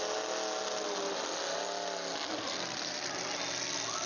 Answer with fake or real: real